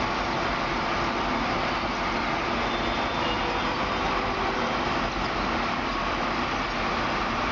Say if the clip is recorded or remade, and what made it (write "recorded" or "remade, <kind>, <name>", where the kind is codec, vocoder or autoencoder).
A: recorded